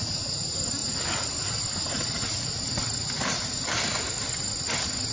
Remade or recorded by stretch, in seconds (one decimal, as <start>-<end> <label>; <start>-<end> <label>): 0.0-5.1 recorded